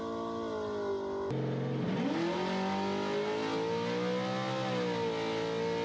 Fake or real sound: real